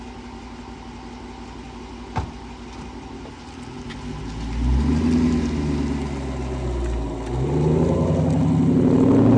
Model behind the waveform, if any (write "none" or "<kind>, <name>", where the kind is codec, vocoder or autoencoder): none